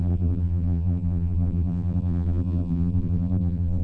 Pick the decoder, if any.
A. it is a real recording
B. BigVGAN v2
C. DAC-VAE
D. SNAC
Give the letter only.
B